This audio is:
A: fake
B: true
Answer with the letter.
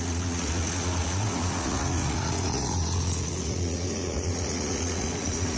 A